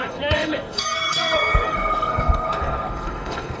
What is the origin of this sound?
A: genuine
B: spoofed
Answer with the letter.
B